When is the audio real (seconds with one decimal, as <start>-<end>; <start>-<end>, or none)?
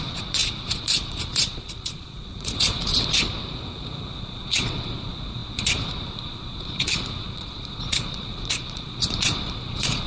3.4-4.2